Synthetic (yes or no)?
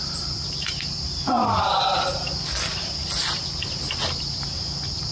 no